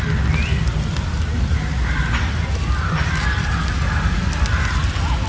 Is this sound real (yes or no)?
yes